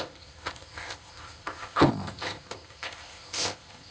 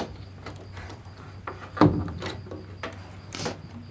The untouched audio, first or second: second